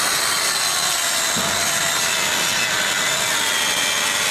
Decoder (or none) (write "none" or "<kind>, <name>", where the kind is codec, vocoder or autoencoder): none